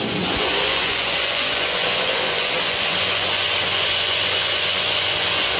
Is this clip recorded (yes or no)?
no